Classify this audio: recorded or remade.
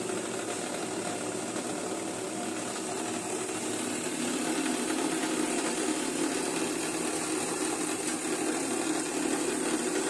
recorded